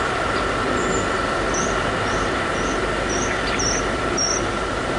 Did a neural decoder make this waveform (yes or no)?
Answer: yes